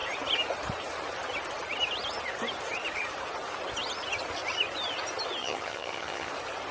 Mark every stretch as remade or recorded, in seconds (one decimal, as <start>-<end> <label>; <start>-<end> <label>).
0.0-5.4 recorded; 5.4-6.3 remade; 6.3-6.7 recorded